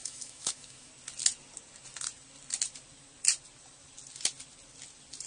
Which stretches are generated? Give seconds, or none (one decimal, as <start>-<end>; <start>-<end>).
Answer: 0.0-0.9